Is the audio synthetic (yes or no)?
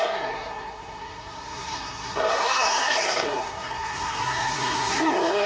yes